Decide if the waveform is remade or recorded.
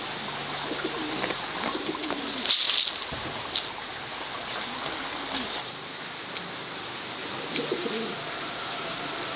recorded